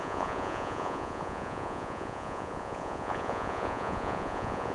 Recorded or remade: remade